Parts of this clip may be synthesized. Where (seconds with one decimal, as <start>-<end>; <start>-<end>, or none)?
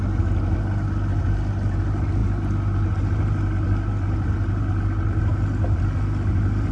none